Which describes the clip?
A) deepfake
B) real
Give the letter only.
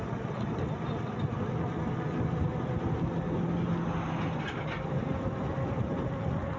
B